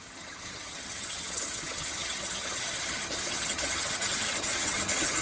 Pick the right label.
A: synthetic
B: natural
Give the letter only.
A